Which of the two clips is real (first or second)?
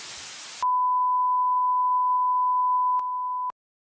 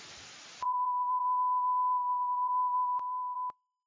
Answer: first